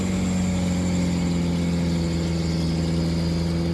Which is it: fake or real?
real